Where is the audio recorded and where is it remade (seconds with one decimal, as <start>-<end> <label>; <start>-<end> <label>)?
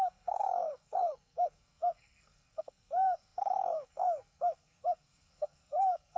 0.0-6.2 remade